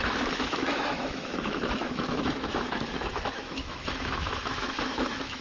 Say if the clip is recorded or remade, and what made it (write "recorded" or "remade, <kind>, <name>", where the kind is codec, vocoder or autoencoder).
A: remade, autoencoder, DAC-VAE